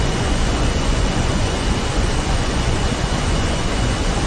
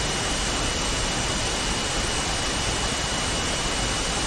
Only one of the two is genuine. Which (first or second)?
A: second